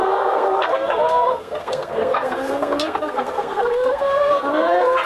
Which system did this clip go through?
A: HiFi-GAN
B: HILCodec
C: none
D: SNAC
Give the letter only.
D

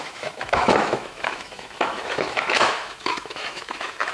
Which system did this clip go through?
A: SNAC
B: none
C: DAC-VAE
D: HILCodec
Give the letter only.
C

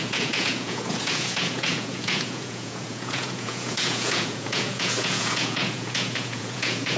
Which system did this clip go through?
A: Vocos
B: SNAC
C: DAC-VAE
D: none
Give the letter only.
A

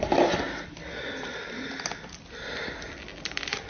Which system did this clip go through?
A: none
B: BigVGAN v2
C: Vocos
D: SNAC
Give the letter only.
A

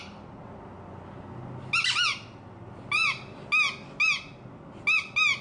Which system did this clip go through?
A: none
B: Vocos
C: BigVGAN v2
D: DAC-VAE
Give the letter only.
A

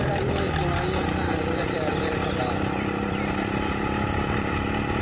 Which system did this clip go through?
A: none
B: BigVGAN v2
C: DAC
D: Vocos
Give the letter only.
B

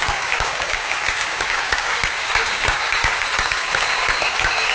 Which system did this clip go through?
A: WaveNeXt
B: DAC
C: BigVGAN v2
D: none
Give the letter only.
B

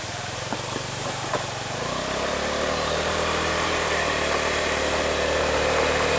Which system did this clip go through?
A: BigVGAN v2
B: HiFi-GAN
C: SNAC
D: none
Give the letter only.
A